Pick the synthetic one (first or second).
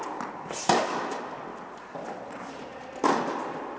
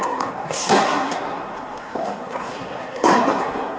second